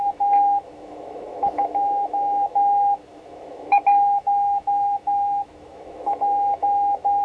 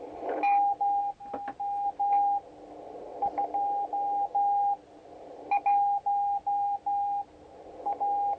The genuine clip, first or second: second